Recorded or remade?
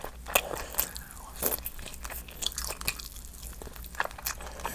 recorded